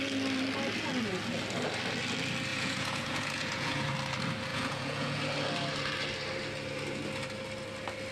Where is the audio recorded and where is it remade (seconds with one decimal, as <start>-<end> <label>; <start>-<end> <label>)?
0.0-2.5 recorded; 2.5-3.9 remade; 3.9-4.5 recorded; 4.5-5.2 remade; 5.2-8.1 recorded